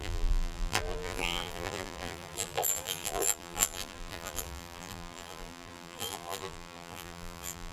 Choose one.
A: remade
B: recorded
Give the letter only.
A